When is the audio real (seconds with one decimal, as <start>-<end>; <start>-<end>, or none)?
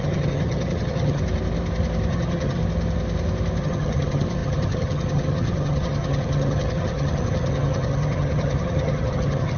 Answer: 1.2-2.1; 2.6-3.6